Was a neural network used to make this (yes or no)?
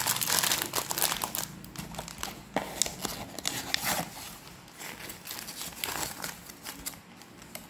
no